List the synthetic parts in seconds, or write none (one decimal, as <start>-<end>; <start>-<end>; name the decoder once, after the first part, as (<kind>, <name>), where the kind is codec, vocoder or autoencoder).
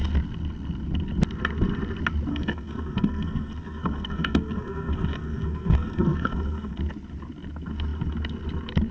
2.3-6.8 (codec, SNAC)